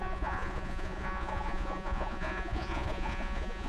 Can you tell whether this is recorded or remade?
remade